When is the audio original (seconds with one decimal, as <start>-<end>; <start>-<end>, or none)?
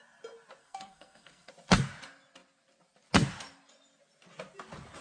0.0-0.6; 1.5-5.0